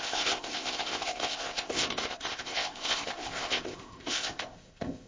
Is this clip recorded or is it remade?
remade